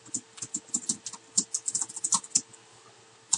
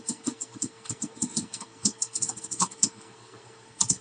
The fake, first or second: second